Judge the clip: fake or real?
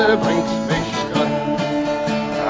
fake